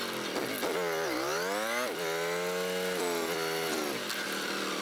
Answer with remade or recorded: recorded